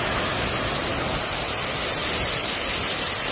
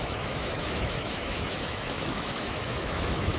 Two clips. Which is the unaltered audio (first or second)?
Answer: first